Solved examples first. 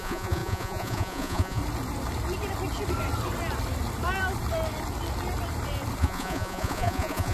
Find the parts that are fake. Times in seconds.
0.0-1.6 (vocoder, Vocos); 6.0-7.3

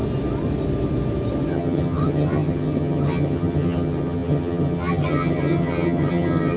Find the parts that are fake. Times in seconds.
1.5-6.6 (vocoder, HiFi-GAN)

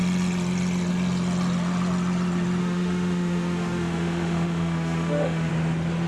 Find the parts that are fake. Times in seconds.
2.6-5.5 (autoencoder, DAC-VAE)